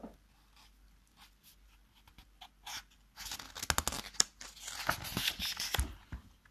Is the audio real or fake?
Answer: real